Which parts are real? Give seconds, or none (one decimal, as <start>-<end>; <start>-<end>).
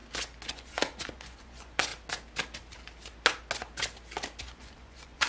0.0-0.5; 1.9-4.4